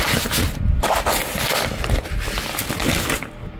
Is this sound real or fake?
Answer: real